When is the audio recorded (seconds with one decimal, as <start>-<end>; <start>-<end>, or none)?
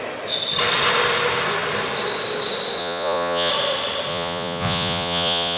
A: 0.0-2.8; 3.5-4.1